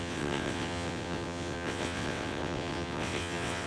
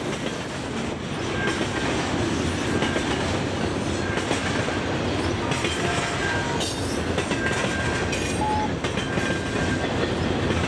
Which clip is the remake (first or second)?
first